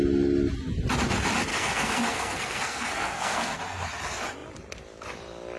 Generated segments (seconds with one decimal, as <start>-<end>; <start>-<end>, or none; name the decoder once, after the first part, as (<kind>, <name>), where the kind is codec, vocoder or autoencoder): 1.5-3.6 (codec, SNAC)

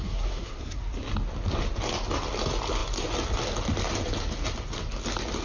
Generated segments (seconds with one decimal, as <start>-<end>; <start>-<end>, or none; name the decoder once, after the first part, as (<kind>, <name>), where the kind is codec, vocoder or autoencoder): 0.0-0.8 (codec, SNAC)

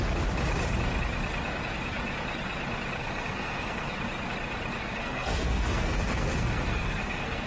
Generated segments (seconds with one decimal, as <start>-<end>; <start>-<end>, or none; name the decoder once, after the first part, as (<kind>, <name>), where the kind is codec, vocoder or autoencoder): 3.0-3.9 (codec, SNAC); 4.8-7.5

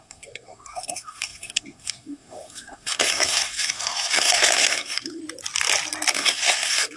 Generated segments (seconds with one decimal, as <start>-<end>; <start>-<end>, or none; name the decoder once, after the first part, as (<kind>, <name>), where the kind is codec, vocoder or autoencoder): 0.0-5.2 (codec, SNAC); 6.1-7.0

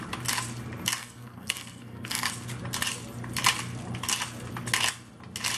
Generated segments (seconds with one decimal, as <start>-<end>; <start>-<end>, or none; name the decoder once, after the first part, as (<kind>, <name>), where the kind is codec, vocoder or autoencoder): 1.0-2.3 (codec, SNAC)